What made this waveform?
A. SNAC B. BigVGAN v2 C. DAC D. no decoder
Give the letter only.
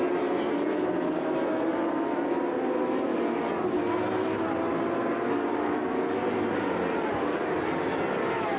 D